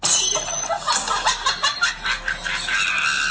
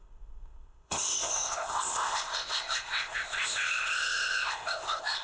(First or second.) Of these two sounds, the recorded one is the first